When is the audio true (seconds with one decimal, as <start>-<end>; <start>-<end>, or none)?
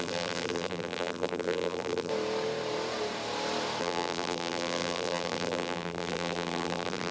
2.1-3.8